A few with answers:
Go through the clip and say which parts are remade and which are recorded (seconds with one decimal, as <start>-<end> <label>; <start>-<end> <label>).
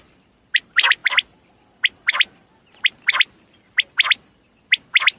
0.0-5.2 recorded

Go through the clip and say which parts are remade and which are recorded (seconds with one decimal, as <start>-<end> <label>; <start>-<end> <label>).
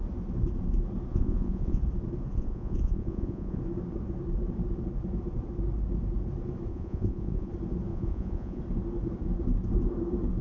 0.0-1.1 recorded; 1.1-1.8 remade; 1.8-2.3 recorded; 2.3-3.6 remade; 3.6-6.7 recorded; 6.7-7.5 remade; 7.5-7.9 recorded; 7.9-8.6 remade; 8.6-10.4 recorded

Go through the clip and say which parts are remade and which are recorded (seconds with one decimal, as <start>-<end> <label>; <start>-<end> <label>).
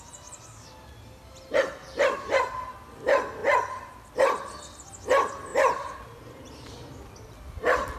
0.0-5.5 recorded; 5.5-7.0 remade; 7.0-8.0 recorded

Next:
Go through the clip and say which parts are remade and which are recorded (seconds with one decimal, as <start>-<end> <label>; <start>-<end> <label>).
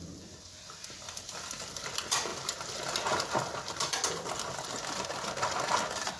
0.0-6.2 recorded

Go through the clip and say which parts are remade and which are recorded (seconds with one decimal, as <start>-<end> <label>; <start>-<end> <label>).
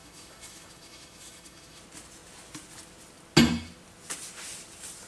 0.0-1.8 remade; 1.8-5.1 recorded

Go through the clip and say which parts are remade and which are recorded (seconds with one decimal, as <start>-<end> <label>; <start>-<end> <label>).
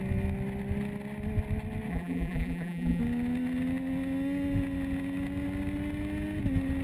0.0-1.9 recorded; 1.9-3.0 remade; 3.0-6.8 recorded